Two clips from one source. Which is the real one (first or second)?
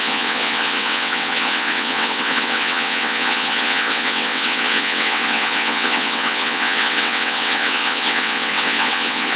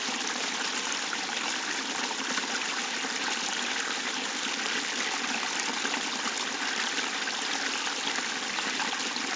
second